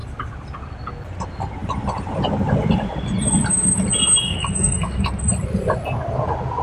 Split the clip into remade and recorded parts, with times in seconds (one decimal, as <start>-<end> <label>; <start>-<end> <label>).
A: 0.0-4.3 recorded; 4.3-5.2 remade; 5.2-6.6 recorded